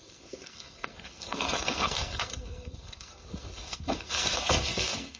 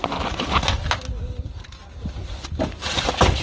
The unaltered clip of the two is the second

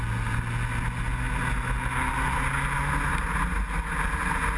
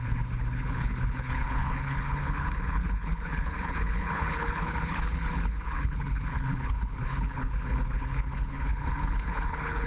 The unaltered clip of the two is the first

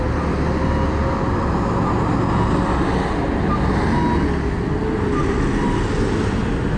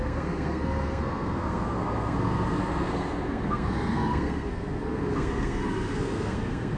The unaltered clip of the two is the first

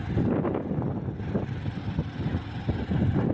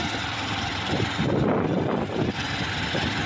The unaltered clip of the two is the first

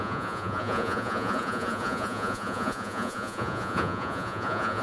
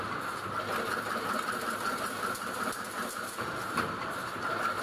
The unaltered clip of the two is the second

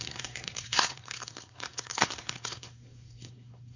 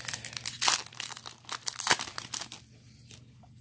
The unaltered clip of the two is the second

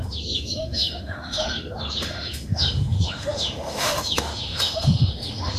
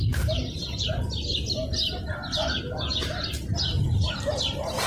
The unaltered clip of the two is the second